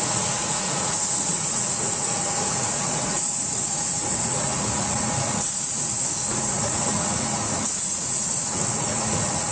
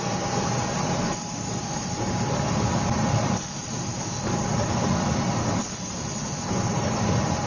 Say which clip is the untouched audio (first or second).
second